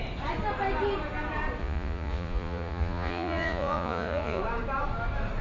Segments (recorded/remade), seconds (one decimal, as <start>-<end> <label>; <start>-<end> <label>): 0.0-1.6 recorded; 1.6-4.4 remade; 4.4-5.4 recorded